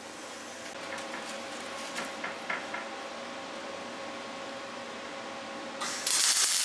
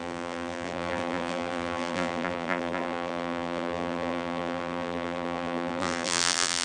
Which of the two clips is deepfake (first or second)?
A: second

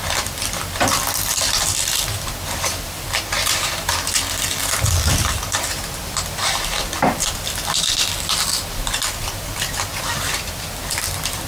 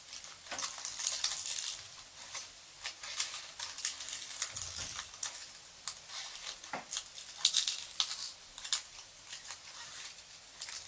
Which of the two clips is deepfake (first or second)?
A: first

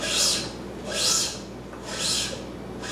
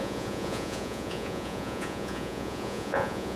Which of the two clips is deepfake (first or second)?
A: second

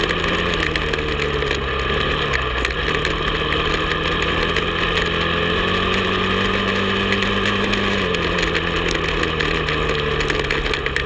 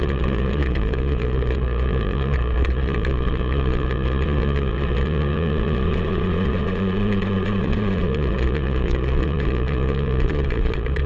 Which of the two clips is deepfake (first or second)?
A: second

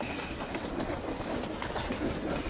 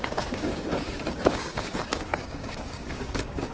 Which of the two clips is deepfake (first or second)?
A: second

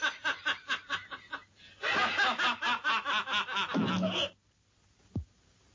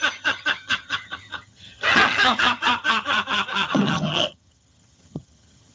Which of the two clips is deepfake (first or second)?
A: second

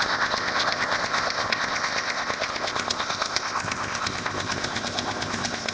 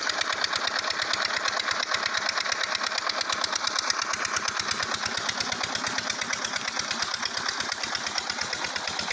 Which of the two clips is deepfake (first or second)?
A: first